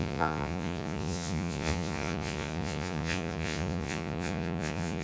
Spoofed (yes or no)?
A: yes